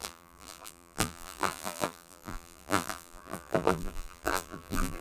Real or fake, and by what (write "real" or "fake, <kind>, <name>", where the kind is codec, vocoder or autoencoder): fake, vocoder, BigVGAN v2